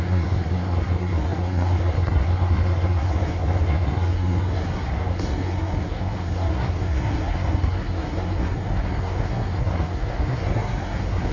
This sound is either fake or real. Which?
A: fake